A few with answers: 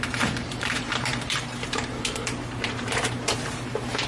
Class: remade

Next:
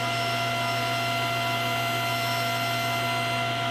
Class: recorded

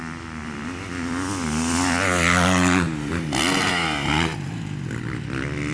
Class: recorded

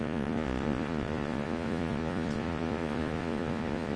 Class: remade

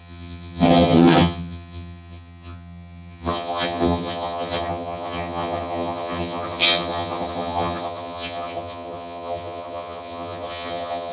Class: remade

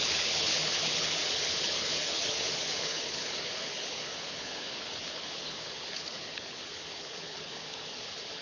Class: remade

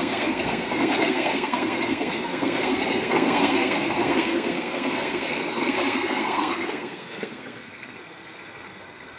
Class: remade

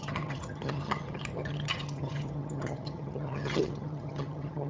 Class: remade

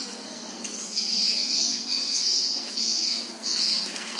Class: remade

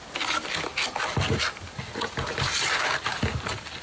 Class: recorded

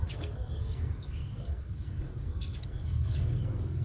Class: remade